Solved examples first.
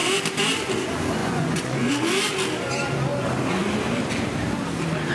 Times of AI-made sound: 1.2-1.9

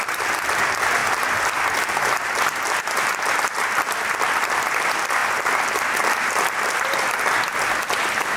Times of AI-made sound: none

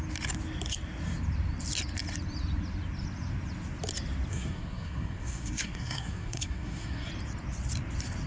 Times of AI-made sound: 4.3-7.1

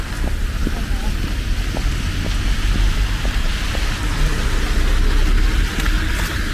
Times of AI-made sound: none

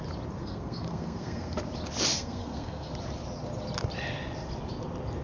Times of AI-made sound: 0.4-1.6; 2.1-2.9

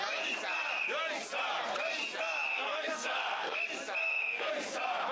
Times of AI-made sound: 2.5-3.6; 4.0-4.5